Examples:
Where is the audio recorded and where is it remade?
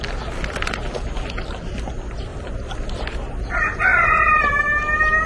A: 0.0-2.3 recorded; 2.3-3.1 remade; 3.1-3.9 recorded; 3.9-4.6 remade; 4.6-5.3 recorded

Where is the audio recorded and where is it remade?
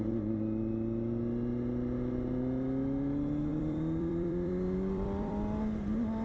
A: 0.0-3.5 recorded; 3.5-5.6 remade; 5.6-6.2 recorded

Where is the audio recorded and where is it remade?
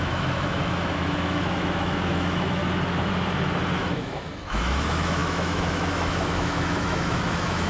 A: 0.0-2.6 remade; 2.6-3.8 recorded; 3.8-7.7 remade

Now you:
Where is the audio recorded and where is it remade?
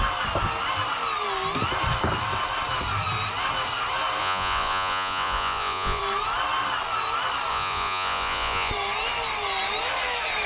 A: 0.0-4.2 recorded; 4.2-6.0 remade; 6.0-7.5 recorded; 7.5-8.7 remade; 8.7-10.5 recorded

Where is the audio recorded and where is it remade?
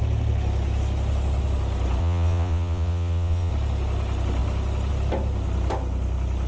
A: 0.0-2.0 recorded; 2.0-3.5 remade; 3.5-6.5 recorded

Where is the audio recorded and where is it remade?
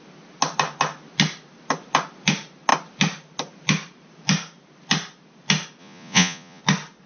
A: 0.0-5.8 recorded; 5.8-6.6 remade; 6.6-7.1 recorded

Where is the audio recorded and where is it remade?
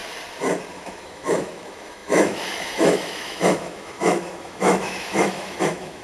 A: 0.0-0.7 recorded; 0.7-6.0 remade